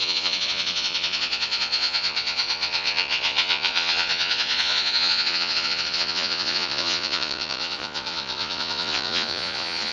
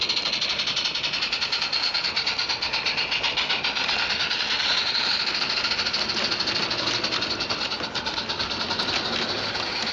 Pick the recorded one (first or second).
second